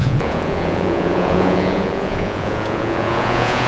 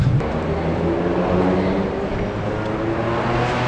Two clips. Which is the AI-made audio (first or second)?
first